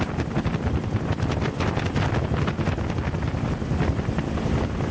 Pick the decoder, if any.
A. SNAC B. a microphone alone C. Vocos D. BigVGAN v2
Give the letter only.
B